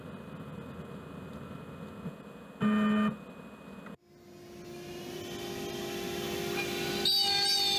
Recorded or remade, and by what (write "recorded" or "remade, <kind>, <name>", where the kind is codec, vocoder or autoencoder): recorded